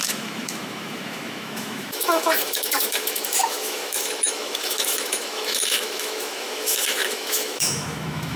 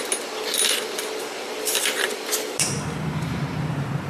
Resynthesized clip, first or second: first